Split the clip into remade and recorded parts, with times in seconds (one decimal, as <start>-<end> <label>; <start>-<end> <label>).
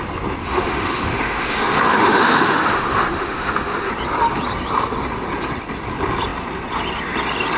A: 0.0-0.4 recorded; 0.4-3.9 remade; 3.9-7.6 recorded